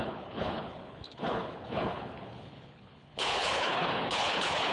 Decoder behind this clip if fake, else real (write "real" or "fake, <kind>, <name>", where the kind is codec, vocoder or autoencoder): fake, codec, HILCodec